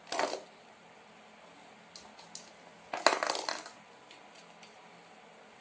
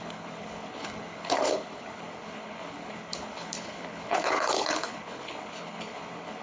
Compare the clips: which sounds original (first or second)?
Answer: first